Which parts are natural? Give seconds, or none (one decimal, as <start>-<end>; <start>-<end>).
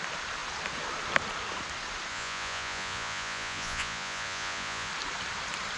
0.0-2.1; 4.9-5.8